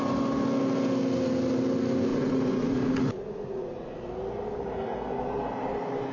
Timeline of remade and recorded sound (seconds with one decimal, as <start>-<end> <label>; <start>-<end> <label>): 0.0-2.1 recorded; 2.1-4.0 remade; 4.0-6.1 recorded